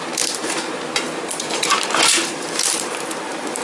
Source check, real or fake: fake